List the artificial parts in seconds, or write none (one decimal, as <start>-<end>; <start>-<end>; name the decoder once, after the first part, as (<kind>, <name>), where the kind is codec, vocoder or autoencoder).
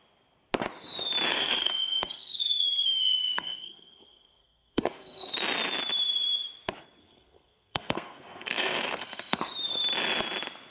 1.3-5.3 (codec, SNAC); 7.0-9.5